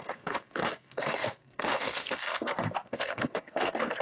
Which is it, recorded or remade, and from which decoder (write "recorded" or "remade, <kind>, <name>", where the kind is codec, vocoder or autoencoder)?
remade, codec, SNAC